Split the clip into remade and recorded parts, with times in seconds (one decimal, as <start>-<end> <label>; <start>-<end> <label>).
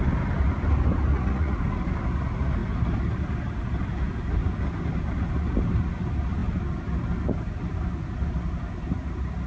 0.0-1.1 recorded; 1.1-1.6 remade; 1.6-9.5 recorded